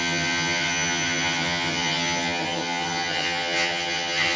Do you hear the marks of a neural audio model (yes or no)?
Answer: yes